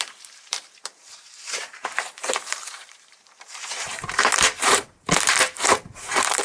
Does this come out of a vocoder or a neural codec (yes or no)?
yes